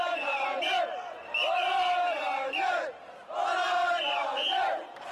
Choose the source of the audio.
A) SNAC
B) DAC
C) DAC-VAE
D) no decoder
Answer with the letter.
D